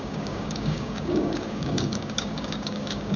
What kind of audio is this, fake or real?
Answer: fake